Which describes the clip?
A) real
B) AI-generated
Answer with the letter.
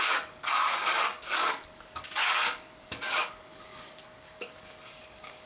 B